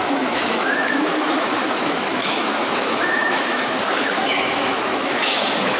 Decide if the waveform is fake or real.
fake